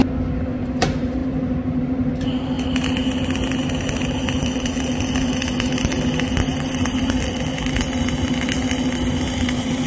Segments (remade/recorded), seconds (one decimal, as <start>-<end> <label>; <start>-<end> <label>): 0.0-9.9 recorded